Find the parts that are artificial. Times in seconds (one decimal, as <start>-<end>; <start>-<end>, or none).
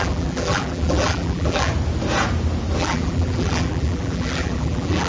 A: 0.0-1.7; 2.8-5.1